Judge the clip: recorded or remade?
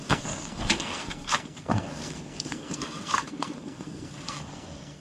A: remade